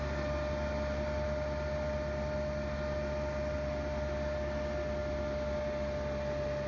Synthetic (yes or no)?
no